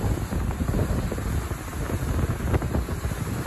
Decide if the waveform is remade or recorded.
recorded